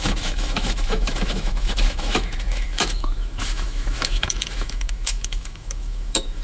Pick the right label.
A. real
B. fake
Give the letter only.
B